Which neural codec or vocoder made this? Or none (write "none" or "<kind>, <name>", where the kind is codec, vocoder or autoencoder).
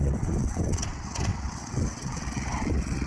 vocoder, WaveNeXt